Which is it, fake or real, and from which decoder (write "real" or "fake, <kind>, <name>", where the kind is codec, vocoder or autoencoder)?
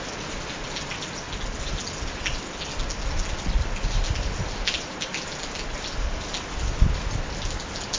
real